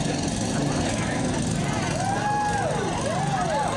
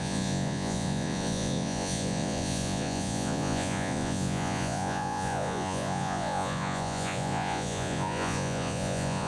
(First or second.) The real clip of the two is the first